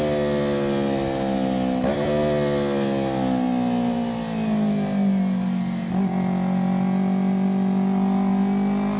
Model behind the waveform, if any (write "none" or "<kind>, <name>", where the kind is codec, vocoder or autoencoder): none